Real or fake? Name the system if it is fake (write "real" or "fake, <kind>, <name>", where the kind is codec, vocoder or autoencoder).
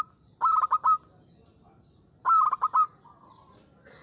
real